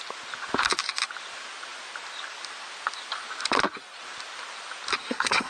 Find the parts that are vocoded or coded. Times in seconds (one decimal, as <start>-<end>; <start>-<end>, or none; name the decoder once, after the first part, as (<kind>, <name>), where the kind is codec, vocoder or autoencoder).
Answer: 5.0-5.5 (codec, SNAC)